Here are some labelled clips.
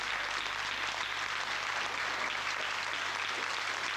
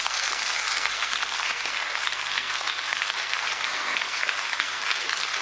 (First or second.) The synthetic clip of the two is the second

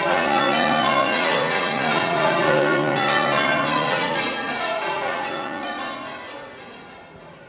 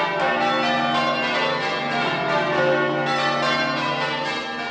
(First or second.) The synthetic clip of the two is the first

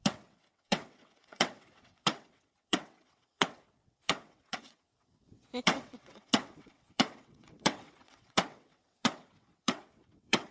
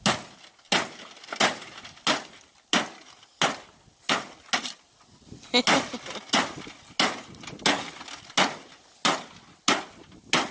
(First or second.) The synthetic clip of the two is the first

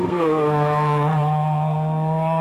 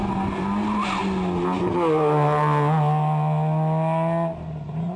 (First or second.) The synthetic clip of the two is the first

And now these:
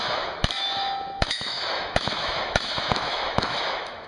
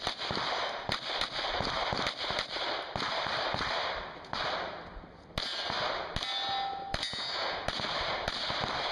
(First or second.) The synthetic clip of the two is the first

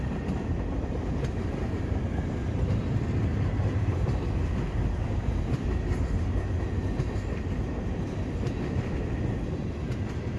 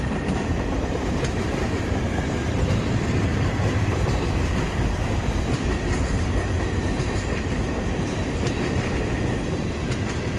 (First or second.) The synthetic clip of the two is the second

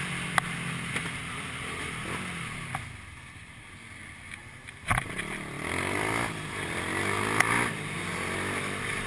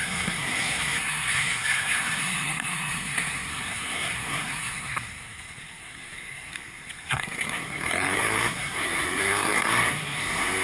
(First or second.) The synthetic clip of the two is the second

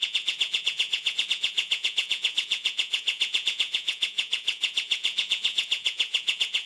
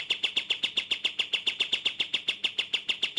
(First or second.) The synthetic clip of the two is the first